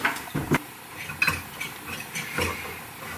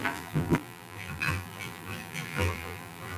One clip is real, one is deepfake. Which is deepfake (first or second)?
second